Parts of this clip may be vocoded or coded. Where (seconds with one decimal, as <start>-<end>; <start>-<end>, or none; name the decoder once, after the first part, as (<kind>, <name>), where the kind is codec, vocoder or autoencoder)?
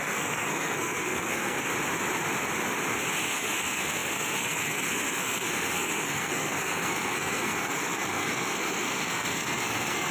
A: 0.0-1.7 (codec, SNAC); 3.3-10.1